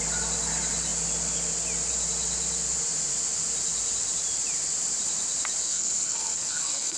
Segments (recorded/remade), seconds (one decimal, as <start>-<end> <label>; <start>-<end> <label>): 0.0-5.6 recorded; 5.6-7.0 remade